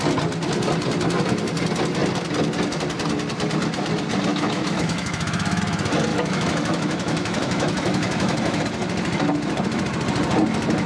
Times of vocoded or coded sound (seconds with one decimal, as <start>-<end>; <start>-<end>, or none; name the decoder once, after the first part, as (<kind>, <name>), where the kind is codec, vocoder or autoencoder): 4.3-5.6 (autoencoder, DAC-VAE); 6.1-8.6